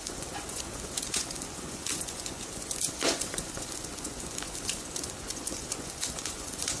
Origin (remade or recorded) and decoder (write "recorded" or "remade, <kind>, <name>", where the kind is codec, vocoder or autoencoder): remade, vocoder, Vocos